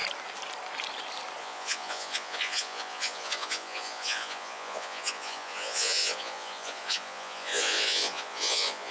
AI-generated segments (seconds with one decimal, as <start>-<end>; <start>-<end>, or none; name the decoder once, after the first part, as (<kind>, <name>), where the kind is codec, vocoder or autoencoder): 1.4-8.9 (vocoder, Vocos)